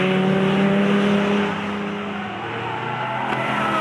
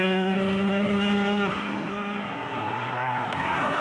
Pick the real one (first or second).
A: first